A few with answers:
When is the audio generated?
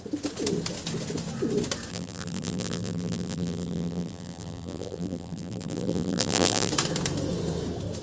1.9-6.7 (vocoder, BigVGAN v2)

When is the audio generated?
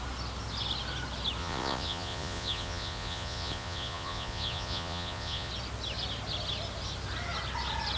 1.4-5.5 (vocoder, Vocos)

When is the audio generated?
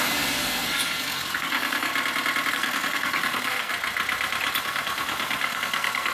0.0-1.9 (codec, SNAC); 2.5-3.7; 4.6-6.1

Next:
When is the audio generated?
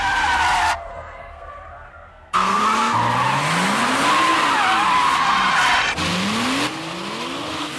0.9-1.5 (codec, SNAC); 1.9-2.6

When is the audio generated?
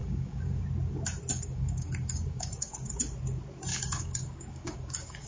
0.0-0.6 (codec, DAC); 1.3-3.0; 3.7-5.3